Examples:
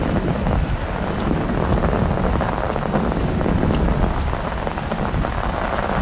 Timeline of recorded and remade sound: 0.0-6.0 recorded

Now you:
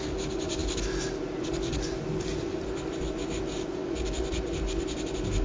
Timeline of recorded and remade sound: 0.0-0.6 recorded; 0.6-3.8 remade; 3.8-5.4 recorded

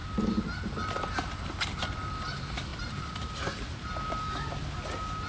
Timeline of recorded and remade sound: 0.0-2.7 recorded; 2.7-3.6 remade; 3.6-5.3 recorded

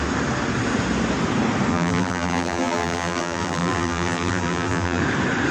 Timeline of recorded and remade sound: 0.0-1.7 recorded; 1.7-5.0 remade; 5.0-5.5 recorded

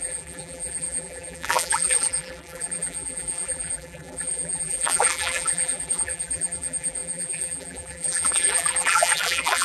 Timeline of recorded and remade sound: 0.0-9.6 remade

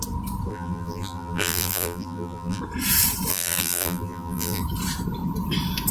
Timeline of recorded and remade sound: 0.0-0.5 recorded; 0.5-2.6 remade; 2.6-3.3 recorded; 3.3-4.6 remade; 4.6-5.9 recorded